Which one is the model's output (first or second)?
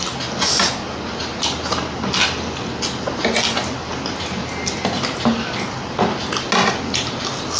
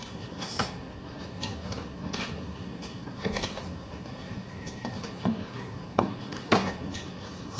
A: second